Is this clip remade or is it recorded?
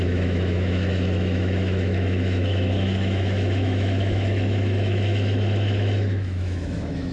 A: remade